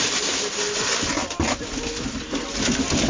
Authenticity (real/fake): real